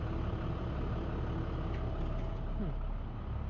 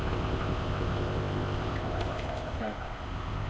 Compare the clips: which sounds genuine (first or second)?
first